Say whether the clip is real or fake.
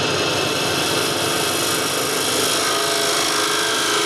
real